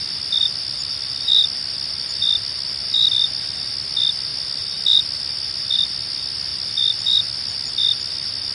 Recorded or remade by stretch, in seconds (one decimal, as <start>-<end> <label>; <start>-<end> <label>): 0.0-8.5 recorded